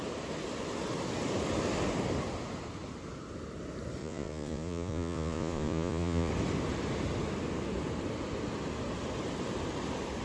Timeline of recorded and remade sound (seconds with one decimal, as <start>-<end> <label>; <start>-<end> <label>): 0.0-4.0 recorded; 4.0-6.3 remade; 6.3-10.2 recorded